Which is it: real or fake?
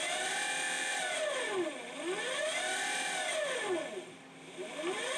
real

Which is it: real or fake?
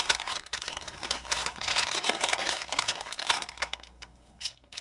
fake